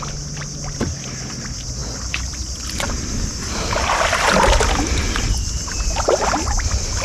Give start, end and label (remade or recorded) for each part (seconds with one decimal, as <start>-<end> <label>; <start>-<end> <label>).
0.0-7.0 recorded